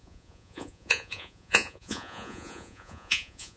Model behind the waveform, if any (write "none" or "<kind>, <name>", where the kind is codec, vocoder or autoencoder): vocoder, Vocos